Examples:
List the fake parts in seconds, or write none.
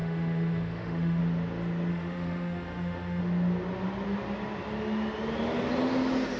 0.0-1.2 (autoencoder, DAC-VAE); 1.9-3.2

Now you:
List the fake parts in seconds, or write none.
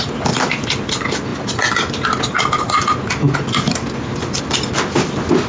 none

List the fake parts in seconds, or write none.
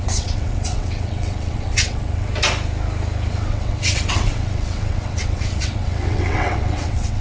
0.0-2.3 (vocoder, WaveNeXt); 3.3-7.2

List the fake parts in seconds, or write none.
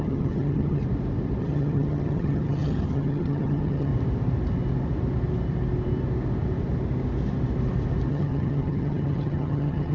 0.0-0.8 (vocoder, HiFi-GAN); 1.4-3.9; 8.1-9.9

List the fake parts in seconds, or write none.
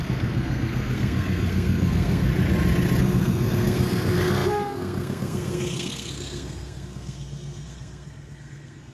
0.0-2.3 (codec, SNAC); 3.0-8.9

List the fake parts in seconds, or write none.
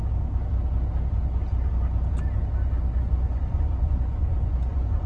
3.0-5.1 (vocoder, Vocos)